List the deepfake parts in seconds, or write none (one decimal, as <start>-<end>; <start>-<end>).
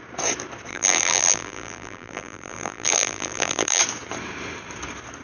0.7-3.8